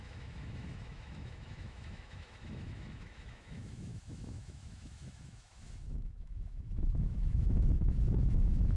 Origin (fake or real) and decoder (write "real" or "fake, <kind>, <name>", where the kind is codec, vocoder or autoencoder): fake, autoencoder, DAC-VAE